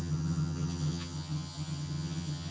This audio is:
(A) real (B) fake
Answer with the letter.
B